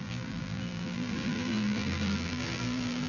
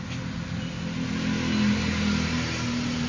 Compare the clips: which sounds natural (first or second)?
second